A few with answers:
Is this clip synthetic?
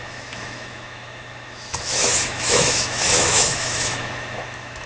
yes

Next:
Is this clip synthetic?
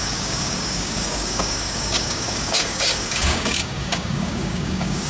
yes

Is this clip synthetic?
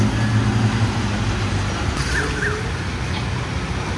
no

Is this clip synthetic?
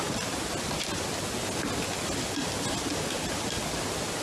no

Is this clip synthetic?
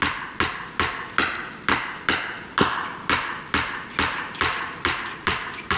no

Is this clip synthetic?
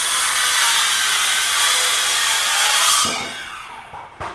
no